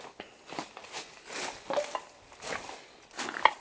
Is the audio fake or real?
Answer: real